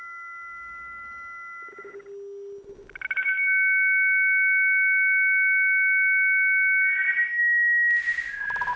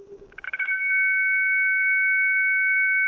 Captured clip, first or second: first